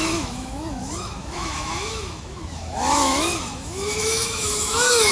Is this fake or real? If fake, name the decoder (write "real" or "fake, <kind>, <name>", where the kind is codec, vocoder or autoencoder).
fake, autoencoder, DAC-VAE